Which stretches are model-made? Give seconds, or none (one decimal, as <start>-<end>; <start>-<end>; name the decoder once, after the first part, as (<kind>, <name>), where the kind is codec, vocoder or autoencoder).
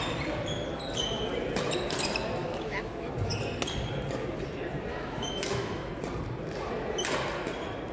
2.4-3.1 (autoencoder, DAC-VAE); 4.9-5.9